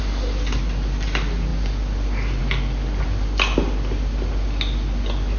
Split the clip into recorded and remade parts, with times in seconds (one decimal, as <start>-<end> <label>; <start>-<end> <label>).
0.0-5.4 recorded